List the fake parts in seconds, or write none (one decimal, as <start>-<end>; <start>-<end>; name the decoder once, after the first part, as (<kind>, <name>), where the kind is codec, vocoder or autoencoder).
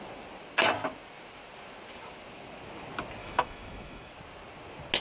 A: 3.2-4.1 (autoencoder, DAC-VAE)